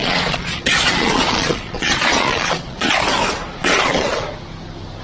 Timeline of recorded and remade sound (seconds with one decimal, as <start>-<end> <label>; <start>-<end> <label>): 0.0-2.9 remade; 2.9-3.6 recorded; 3.6-4.2 remade; 4.2-5.0 recorded